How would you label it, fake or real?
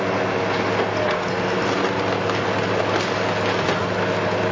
real